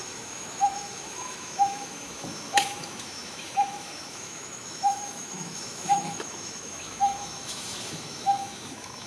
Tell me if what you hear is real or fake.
fake